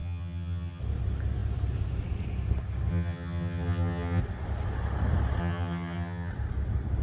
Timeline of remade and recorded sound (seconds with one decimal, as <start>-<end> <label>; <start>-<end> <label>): 0.0-0.8 remade; 0.8-2.9 recorded; 2.9-4.2 remade; 4.2-5.4 recorded; 5.4-6.3 remade; 6.3-7.0 recorded